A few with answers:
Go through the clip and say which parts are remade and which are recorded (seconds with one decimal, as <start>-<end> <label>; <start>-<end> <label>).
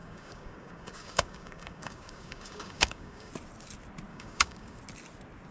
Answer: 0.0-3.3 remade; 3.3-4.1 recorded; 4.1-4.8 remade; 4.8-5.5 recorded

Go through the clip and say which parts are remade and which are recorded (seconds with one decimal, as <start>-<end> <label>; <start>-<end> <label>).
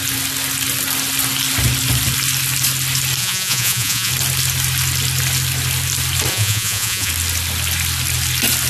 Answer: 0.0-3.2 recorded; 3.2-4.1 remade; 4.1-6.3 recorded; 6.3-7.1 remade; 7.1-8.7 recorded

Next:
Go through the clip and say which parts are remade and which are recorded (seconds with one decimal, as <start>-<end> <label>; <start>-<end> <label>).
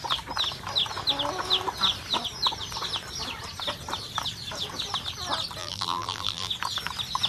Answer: 0.0-5.6 recorded; 5.6-6.5 remade; 6.5-7.3 recorded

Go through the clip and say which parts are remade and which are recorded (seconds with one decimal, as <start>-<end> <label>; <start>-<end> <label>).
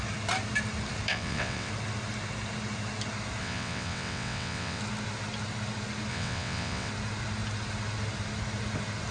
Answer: 0.0-1.1 recorded; 1.1-1.7 remade; 1.7-3.4 recorded; 3.4-4.8 remade; 4.8-6.1 recorded; 6.1-6.9 remade; 6.9-9.1 recorded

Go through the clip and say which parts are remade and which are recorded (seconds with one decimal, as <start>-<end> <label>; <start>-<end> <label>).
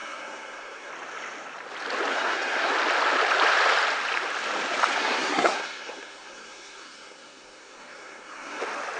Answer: 0.0-0.9 remade; 0.9-2.1 recorded; 2.1-2.7 remade; 2.7-4.9 recorded; 4.9-8.6 remade; 8.6-9.0 recorded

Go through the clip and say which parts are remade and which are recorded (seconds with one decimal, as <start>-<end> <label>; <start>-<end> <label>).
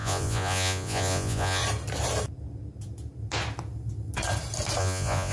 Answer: 0.0-1.6 remade; 1.6-4.8 recorded; 4.8-5.3 remade